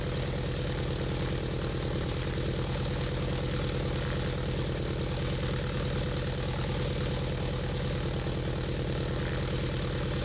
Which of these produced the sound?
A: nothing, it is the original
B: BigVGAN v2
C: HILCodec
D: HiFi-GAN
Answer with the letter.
A